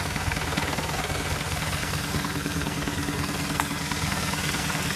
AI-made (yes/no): yes